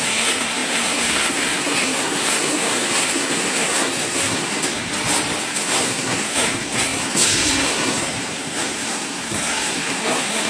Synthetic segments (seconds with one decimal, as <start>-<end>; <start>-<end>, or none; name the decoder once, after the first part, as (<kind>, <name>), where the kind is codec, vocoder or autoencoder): 0.0-4.9 (codec, SNAC); 5.4-10.5

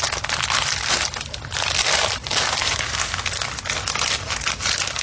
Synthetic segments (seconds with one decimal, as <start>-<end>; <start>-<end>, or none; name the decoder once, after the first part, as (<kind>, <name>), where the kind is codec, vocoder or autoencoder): none

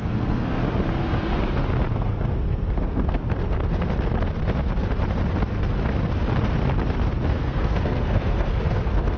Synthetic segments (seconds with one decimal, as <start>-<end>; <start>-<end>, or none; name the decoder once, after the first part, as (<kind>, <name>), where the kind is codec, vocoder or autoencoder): 0.0-0.6 (codec, SNAC); 1.9-3.2; 7.3-9.2